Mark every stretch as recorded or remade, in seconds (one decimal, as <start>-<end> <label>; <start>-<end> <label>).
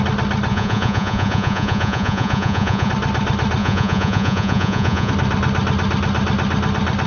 0.0-0.5 recorded; 0.5-2.9 remade; 2.9-3.6 recorded; 3.6-5.1 remade; 5.1-7.1 recorded